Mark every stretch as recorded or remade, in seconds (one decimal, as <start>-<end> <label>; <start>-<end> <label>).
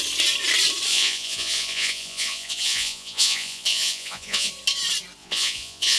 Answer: 0.0-0.9 recorded; 0.9-4.5 remade; 4.5-5.2 recorded; 5.2-6.0 remade